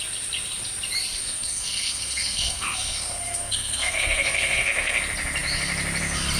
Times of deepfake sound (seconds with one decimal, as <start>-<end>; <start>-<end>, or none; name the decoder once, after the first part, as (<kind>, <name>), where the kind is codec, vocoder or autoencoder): 1.2-5.0 (codec, SNAC)

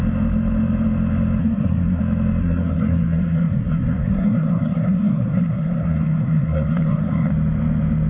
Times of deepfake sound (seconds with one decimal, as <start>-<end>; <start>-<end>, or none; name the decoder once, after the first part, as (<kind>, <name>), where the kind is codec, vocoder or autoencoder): 1.4-2.0 (codec, SNAC); 2.4-7.3